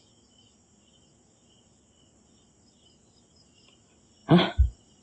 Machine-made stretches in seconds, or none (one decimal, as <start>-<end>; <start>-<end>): none